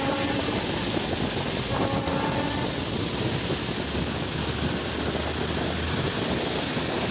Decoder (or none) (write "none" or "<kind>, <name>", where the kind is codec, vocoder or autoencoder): none